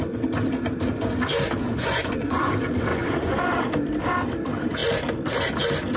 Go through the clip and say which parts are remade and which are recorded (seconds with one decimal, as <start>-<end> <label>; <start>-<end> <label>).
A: 0.0-1.7 recorded; 1.7-2.5 remade; 2.5-2.9 recorded; 2.9-3.5 remade; 3.5-6.0 recorded